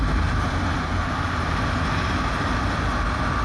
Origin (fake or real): real